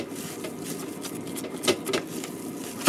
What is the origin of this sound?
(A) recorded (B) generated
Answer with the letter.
A